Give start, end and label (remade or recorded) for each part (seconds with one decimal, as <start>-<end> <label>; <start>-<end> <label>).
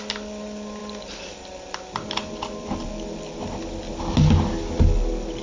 0.0-5.4 recorded